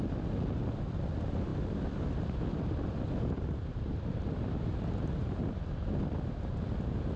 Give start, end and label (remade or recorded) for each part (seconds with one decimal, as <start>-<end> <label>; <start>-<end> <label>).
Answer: 0.0-1.5 recorded; 1.5-5.3 remade; 5.3-7.2 recorded